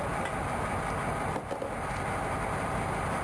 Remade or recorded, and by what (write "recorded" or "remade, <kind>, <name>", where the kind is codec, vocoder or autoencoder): recorded